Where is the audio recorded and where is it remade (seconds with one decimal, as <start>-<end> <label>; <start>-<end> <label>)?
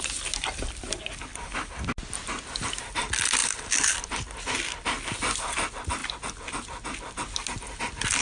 0.0-1.3 recorded; 1.3-1.9 remade; 1.9-3.4 recorded; 3.4-4.2 remade; 4.2-6.0 recorded; 6.0-6.5 remade; 6.5-8.2 recorded